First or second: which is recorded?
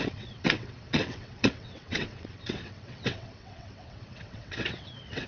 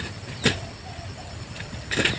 second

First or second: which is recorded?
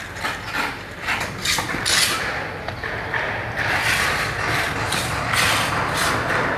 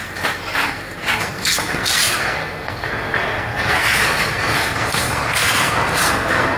first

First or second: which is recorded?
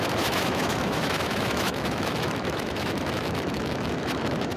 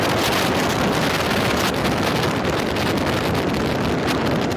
second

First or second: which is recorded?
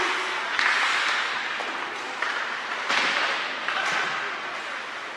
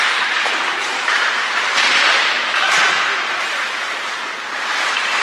first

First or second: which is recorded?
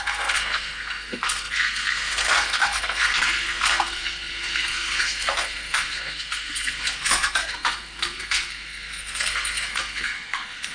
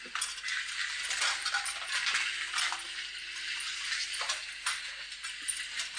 second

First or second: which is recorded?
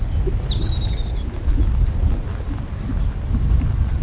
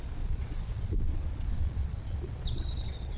first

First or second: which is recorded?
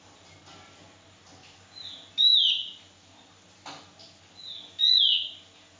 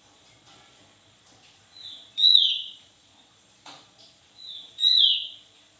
first